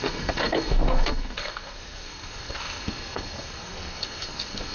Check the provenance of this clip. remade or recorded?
remade